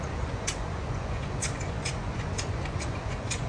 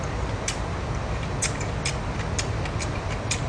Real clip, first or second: second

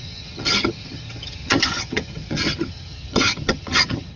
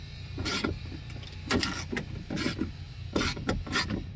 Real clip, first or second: second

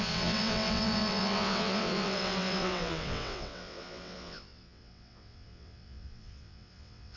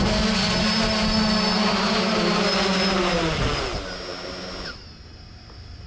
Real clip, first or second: second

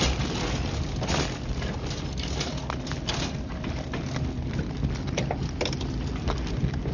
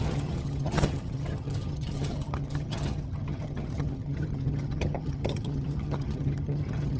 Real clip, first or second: first